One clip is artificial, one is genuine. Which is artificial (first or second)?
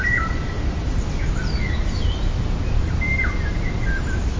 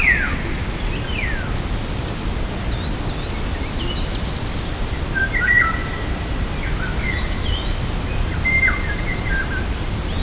first